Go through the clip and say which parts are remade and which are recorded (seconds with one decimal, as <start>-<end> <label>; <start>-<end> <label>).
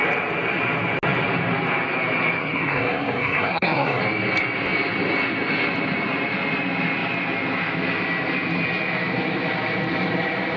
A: 0.0-2.4 recorded; 2.4-4.0 remade; 4.0-10.6 recorded